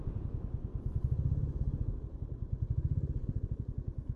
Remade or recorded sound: recorded